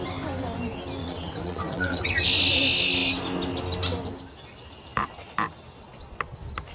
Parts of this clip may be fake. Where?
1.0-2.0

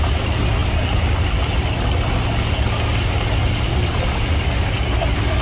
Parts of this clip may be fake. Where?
none

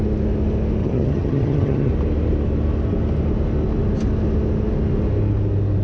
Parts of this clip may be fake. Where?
0.8-1.9